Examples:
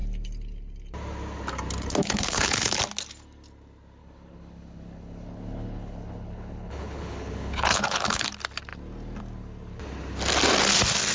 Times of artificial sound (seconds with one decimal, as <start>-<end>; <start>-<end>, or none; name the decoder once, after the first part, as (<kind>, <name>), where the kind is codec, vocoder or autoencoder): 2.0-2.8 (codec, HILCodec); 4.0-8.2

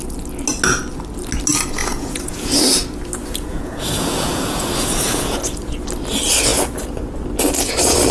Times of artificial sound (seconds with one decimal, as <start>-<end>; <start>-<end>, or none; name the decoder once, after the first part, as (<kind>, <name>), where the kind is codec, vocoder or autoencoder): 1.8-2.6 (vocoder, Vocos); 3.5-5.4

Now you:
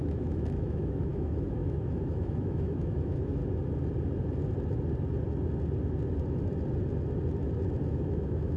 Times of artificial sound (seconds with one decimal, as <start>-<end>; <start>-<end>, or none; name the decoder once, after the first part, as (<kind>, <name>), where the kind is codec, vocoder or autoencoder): 0.0-3.4 (autoencoder, DAC-VAE); 7.9-8.6

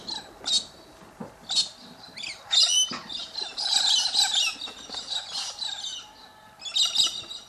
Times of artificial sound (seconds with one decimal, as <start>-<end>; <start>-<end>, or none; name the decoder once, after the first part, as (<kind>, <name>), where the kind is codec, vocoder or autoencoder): none

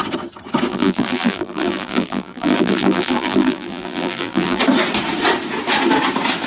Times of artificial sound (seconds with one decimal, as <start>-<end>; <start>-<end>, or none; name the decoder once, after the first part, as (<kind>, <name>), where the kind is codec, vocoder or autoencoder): 0.7-4.6 (vocoder, BigVGAN v2)

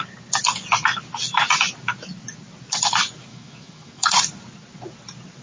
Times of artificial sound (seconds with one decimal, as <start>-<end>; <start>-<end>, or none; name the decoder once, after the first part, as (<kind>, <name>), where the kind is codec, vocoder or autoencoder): 3.3-4.1 (autoencoder, DAC-VAE)

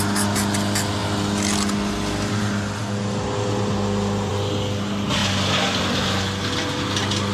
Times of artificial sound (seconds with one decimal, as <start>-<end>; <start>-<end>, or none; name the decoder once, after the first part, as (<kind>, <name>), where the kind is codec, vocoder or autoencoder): none

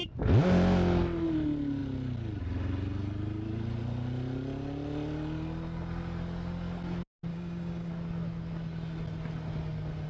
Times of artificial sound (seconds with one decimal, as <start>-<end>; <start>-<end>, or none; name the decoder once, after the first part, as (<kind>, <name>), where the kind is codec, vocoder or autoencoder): 7.3-7.9 (codec, DAC)